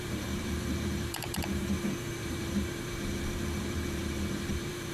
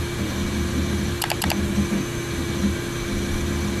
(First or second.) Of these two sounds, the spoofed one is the first